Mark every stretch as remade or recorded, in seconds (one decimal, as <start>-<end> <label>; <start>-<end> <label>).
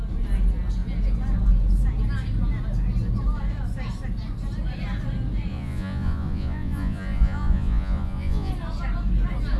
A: 0.0-5.5 recorded; 5.5-8.5 remade; 8.5-9.6 recorded